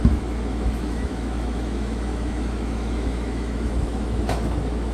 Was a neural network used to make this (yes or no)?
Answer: yes